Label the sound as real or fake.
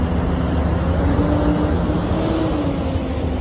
real